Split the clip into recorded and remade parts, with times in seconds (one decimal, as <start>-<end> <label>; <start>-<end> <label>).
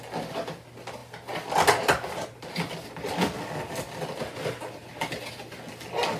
0.0-6.2 recorded